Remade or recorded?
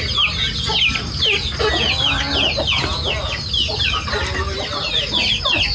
recorded